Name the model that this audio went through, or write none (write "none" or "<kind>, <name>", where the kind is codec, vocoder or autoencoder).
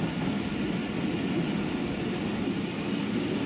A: none